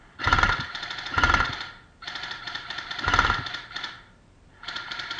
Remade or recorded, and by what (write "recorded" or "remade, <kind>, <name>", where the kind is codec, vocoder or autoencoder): remade, vocoder, BigVGAN v2